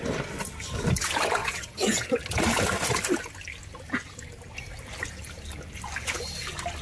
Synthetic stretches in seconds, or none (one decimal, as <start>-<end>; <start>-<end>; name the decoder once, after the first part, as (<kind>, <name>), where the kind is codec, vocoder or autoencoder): 1.4-1.9 (vocoder, WaveNeXt)